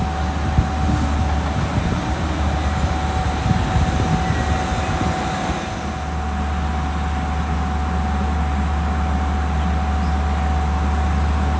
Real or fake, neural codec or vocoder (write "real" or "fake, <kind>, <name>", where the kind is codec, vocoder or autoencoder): real